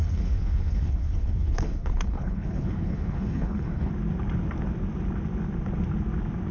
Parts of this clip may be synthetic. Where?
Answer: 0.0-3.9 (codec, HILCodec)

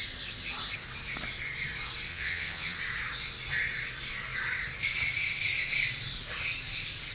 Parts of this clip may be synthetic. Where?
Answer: 2.1-2.8 (vocoder, WaveNeXt)

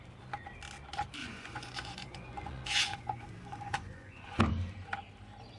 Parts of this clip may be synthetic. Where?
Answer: 1.2-4.4 (vocoder, Vocos)

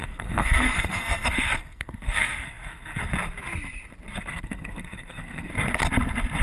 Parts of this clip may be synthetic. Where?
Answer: 0.0-3.0 (codec, SNAC); 4.2-5.5

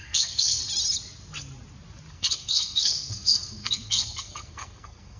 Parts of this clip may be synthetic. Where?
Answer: 0.0-0.6 (codec, SNAC); 2.1-5.2